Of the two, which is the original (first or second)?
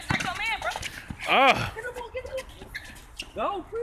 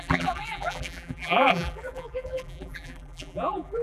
first